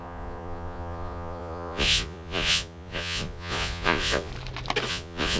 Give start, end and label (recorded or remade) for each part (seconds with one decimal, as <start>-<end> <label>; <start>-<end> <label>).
0.0-4.3 remade; 4.3-4.9 recorded; 4.9-5.4 remade